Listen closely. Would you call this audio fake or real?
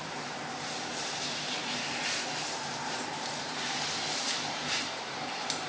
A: fake